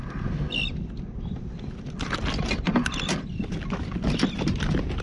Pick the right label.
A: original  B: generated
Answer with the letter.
A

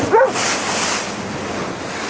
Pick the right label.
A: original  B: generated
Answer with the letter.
A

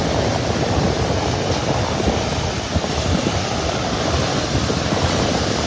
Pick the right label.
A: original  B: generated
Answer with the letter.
A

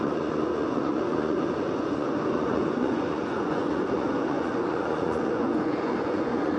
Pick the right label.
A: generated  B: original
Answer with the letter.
A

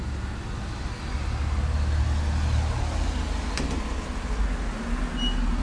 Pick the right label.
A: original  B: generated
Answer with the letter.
A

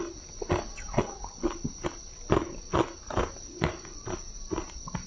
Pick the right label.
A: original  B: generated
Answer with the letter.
A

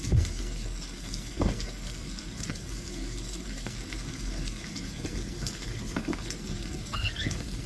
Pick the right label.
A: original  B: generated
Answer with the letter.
B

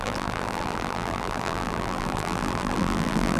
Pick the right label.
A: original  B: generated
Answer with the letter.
B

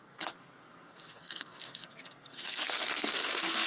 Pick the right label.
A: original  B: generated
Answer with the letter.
B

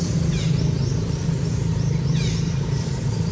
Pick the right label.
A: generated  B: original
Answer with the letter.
B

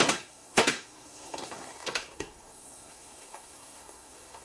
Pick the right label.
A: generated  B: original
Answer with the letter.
A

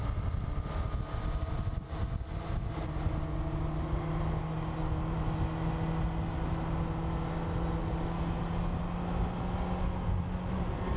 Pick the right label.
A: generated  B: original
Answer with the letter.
B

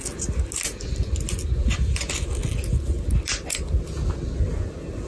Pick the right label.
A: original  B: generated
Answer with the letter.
A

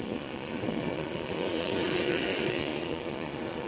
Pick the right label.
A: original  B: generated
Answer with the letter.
B